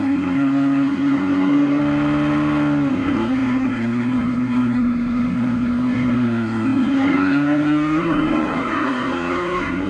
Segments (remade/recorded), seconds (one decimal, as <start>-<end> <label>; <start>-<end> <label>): 0.0-1.8 remade; 1.8-2.9 recorded; 2.9-9.9 remade